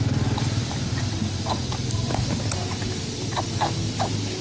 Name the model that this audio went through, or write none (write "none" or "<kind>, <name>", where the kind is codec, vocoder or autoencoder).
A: none